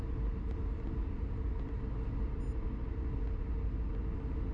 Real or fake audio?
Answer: real